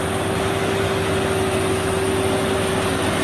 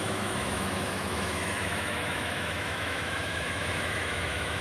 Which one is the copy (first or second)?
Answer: second